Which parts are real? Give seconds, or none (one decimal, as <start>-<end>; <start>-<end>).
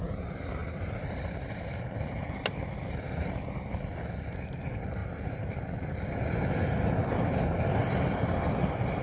0.0-0.6; 3.5-5.0; 5.6-9.0